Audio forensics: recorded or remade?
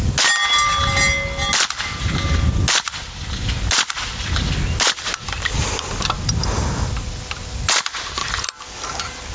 recorded